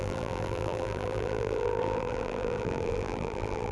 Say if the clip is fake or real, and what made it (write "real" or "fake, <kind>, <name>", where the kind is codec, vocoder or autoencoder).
fake, vocoder, BigVGAN v2